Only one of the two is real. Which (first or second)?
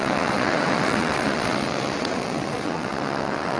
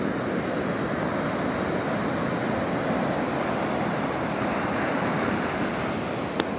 second